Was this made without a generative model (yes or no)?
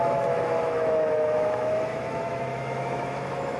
no